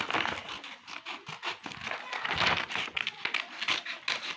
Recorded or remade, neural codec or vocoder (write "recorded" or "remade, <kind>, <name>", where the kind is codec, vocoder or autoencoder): recorded